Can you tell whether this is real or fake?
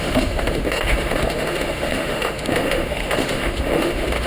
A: fake